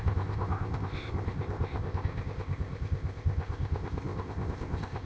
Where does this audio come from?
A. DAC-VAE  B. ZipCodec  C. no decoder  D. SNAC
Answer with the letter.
B